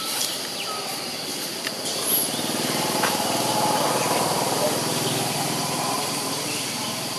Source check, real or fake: real